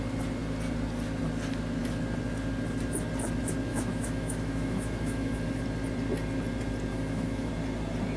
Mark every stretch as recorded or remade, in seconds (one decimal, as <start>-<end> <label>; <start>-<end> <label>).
0.0-3.7 recorded; 3.7-5.6 remade; 5.6-6.9 recorded; 6.9-7.5 remade; 7.5-8.2 recorded